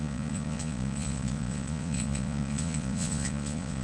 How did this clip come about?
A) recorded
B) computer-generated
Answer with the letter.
B